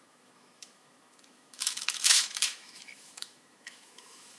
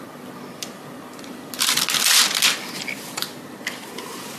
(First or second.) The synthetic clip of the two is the first